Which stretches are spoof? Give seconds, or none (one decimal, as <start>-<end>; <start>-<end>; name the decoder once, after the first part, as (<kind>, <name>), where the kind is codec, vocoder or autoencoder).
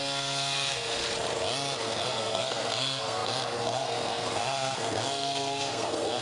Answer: 0.0-1.0 (codec, SNAC); 1.8-6.2